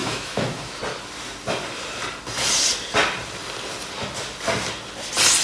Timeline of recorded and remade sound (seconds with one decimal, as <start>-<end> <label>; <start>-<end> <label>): 0.0-0.8 remade; 0.8-5.4 recorded